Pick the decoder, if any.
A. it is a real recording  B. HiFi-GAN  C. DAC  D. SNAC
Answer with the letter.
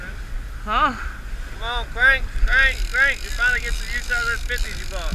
A